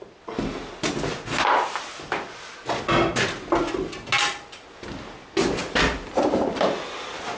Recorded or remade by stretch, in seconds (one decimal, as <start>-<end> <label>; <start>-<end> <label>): 0.0-7.4 recorded